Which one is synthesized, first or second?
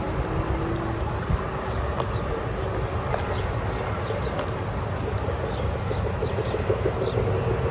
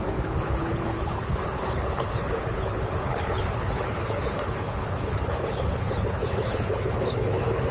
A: second